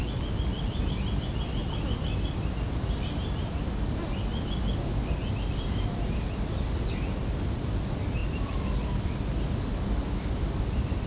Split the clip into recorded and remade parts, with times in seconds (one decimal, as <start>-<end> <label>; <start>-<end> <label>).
0.0-0.8 remade; 0.8-1.6 recorded; 1.6-2.5 remade; 2.5-8.2 recorded; 8.2-9.5 remade; 9.5-11.1 recorded